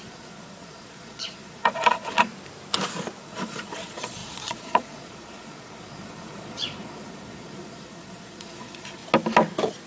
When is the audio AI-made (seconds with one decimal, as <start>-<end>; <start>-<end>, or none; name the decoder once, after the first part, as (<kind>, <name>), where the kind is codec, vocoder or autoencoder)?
0.0-2.3 (vocoder, Vocos); 3.2-9.0